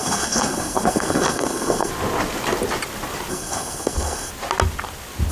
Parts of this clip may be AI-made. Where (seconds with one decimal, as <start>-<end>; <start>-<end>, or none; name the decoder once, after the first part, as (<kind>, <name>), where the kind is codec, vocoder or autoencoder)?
0.0-1.9 (codec, SNAC); 3.3-4.3